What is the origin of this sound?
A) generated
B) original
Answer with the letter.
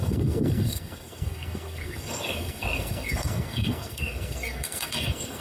A